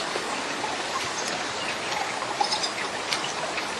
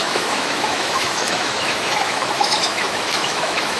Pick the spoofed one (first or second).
second